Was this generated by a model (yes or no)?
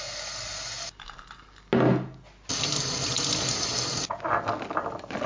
no